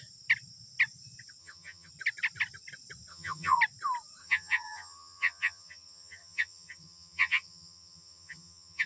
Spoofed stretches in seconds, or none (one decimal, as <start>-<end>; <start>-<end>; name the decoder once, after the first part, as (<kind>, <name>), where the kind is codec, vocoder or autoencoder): 1.4-1.9 (vocoder, HiFi-GAN); 3.1-3.6; 4.2-8.9